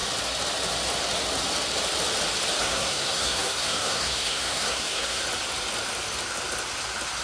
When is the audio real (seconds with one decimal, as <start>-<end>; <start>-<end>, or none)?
0.0-2.6; 5.2-7.2